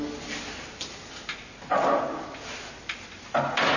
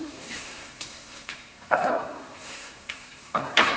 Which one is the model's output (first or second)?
second